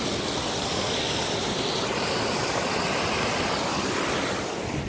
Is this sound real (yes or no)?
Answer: yes